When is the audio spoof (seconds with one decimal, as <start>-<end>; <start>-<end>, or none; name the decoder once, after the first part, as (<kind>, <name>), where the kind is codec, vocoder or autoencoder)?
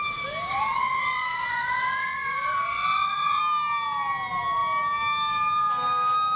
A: 0.5-3.4 (vocoder, WaveNeXt)